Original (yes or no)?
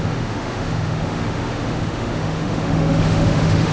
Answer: no